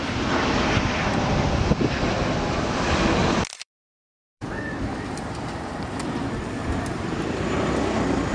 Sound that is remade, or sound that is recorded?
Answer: remade